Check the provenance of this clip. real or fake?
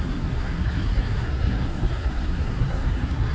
fake